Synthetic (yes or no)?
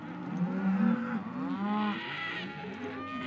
no